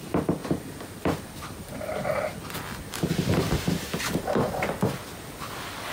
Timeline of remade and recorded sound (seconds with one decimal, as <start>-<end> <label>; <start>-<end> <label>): 0.0-5.0 remade; 5.0-5.9 recorded